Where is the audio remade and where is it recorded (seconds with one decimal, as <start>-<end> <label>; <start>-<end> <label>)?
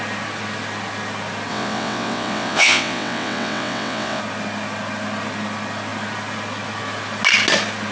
0.0-1.5 recorded; 1.5-4.2 remade; 4.2-7.9 recorded